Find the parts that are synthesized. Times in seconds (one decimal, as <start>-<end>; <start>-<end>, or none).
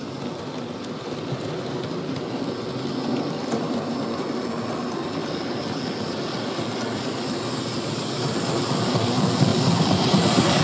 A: 3.1-4.0; 5.2-8.5; 9.5-10.6